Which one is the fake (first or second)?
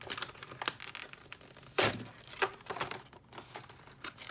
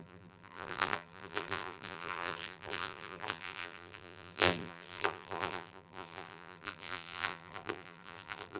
second